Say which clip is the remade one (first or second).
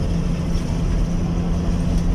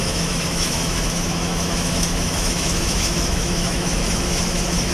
second